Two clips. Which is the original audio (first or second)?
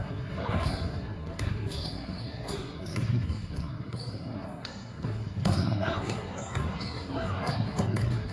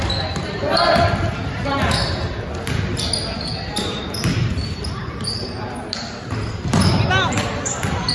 second